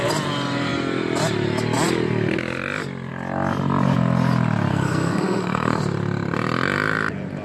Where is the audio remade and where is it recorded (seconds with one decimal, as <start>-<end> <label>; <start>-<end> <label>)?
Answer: 0.0-4.7 recorded; 4.7-5.8 remade; 5.8-7.4 recorded